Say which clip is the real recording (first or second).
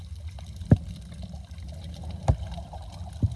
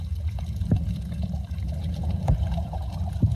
first